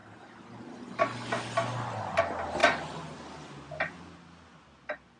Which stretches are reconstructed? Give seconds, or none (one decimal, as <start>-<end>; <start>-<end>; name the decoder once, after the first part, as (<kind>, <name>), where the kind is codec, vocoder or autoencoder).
none